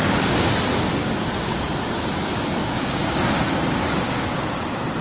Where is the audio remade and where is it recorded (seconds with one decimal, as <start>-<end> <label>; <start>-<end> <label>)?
0.0-0.5 remade; 0.5-1.0 recorded; 1.0-1.7 remade; 1.7-2.6 recorded; 2.6-4.5 remade; 4.5-5.0 recorded